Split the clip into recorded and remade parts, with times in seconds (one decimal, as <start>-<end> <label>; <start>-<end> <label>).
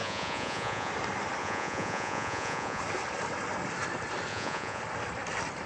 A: 0.0-0.9 remade; 0.9-1.4 recorded; 1.4-2.8 remade; 2.8-4.3 recorded; 4.3-4.8 remade; 4.8-5.7 recorded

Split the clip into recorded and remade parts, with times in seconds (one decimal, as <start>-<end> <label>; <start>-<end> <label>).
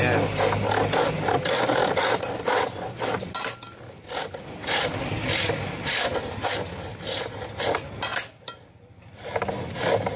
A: 0.0-10.2 recorded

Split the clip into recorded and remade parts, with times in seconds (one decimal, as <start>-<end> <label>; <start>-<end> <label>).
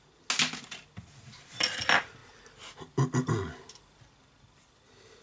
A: 0.0-5.2 recorded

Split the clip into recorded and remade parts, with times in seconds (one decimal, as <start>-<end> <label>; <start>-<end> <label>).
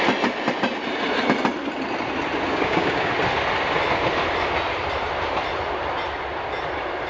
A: 0.0-2.5 recorded; 2.5-3.1 remade; 3.1-7.1 recorded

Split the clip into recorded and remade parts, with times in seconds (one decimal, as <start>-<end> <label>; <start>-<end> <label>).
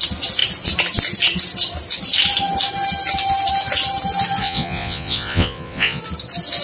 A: 0.0-4.4 recorded; 4.4-6.0 remade; 6.0-6.6 recorded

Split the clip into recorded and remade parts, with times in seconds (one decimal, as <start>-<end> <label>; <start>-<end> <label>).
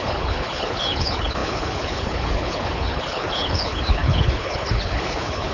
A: 0.0-5.5 remade